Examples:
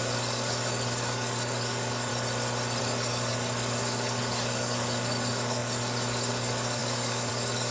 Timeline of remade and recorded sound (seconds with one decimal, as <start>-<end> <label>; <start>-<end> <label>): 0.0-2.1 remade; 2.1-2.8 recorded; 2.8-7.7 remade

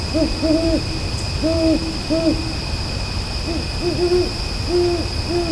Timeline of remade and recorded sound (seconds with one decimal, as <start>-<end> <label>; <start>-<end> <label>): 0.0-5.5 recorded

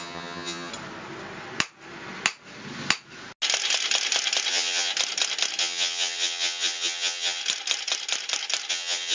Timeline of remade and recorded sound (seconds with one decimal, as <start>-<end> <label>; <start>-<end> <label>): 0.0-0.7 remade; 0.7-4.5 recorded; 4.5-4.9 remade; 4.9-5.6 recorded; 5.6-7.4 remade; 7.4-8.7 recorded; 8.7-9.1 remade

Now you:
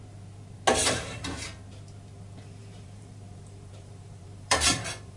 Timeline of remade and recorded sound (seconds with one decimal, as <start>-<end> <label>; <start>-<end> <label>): 0.0-0.8 recorded; 0.8-1.3 remade; 1.3-2.6 recorded; 2.6-5.2 remade